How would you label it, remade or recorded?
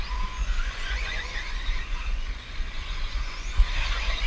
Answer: remade